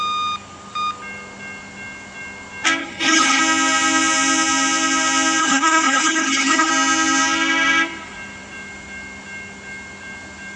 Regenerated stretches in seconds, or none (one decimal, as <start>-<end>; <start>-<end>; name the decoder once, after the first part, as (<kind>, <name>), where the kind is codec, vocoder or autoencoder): 2.8-3.4 (codec, HILCodec); 5.4-6.7